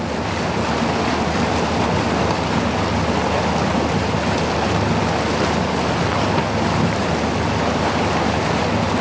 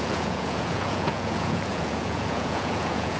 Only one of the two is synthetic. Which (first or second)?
second